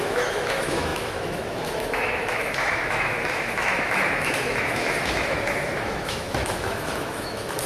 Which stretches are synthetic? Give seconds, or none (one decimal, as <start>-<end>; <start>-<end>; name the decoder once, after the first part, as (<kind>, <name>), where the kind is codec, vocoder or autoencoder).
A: 0.0-7.7 (autoencoder, DAC-VAE)